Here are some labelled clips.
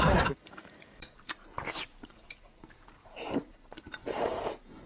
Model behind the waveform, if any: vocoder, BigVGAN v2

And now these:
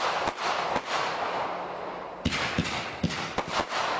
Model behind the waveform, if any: none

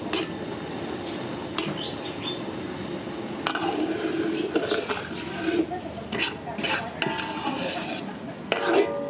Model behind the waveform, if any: none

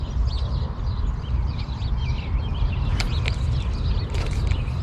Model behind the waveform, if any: none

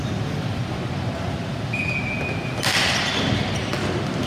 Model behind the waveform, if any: vocoder, BigVGAN v2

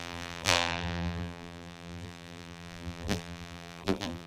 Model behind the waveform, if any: vocoder, BigVGAN v2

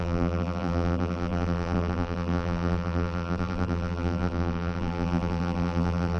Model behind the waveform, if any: vocoder, BigVGAN v2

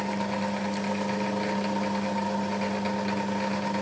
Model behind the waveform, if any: none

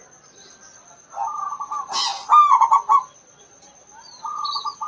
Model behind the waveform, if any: none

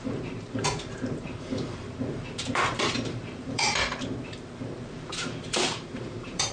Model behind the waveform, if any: vocoder, BigVGAN v2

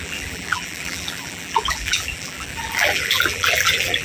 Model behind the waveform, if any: vocoder, BigVGAN v2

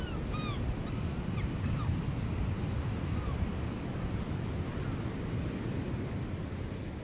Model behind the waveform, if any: none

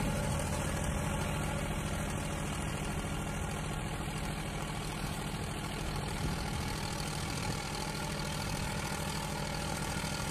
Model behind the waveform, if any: none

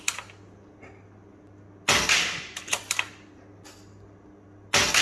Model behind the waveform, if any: none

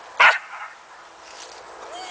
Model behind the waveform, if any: none